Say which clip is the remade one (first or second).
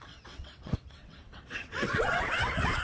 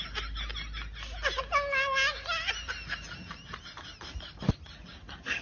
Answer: first